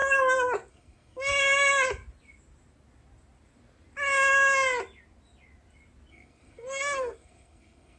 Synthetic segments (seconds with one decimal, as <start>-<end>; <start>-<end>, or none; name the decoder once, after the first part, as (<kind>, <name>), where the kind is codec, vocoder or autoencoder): 0.7-1.3 (codec, SNAC); 6.1-8.0